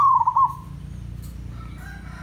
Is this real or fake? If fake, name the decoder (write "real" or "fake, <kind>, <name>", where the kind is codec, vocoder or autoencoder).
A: real